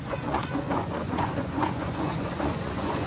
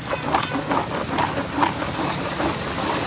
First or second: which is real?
second